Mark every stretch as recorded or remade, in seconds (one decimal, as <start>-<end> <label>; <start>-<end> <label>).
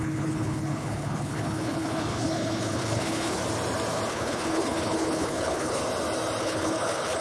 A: 0.0-3.4 remade; 3.4-4.1 recorded; 4.1-5.8 remade; 5.8-6.4 recorded; 6.4-7.2 remade